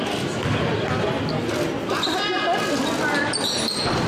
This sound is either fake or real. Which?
real